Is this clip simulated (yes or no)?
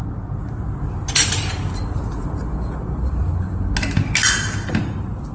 no